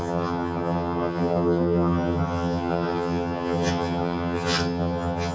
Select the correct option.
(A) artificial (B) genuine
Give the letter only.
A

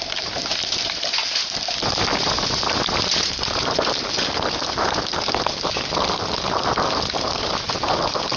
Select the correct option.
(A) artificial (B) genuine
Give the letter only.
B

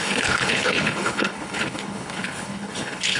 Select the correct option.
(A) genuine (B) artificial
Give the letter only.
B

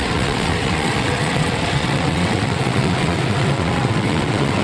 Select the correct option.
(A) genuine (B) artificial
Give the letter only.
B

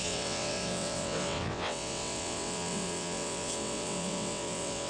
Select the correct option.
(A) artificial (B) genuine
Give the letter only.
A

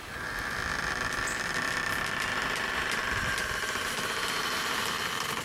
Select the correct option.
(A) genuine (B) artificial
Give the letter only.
B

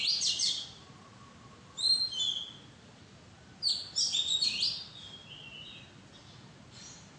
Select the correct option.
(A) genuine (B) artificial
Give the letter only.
A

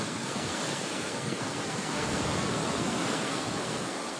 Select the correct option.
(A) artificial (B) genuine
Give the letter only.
A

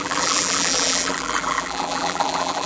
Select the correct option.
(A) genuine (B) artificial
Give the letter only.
B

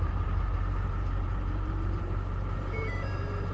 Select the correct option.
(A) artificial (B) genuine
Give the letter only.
A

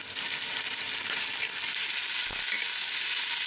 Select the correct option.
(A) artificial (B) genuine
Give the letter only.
B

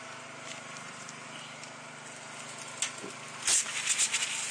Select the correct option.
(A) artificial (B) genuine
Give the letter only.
B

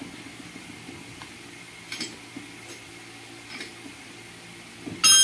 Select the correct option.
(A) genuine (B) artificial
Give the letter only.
A